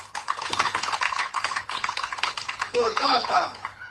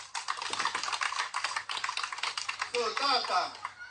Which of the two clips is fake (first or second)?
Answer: first